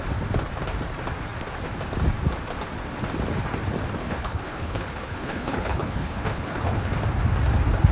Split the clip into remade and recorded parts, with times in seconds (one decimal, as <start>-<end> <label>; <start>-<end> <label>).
0.0-4.0 recorded; 4.0-6.9 remade; 6.9-7.9 recorded